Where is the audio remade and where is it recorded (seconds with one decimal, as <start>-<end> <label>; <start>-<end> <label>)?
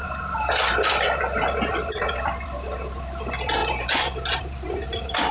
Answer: 0.0-1.2 remade; 1.2-5.3 recorded